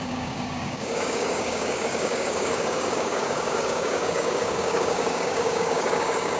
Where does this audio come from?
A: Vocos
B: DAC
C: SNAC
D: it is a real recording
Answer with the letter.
B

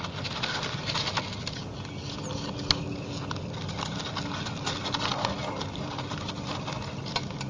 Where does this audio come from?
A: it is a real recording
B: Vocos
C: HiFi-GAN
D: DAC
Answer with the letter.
A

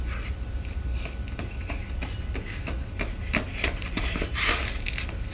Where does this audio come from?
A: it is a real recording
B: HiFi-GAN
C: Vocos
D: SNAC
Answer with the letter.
A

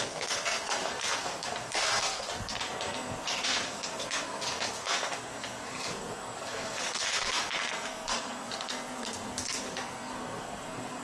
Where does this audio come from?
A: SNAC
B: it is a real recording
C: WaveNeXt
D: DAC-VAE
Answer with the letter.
A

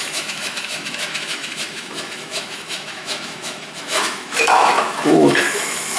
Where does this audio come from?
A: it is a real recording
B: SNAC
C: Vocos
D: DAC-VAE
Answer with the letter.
D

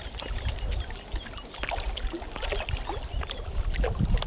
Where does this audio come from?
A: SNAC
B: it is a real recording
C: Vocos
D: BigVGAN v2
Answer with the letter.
B